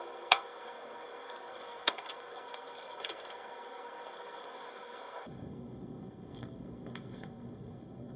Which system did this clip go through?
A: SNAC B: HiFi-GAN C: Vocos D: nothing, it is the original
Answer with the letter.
A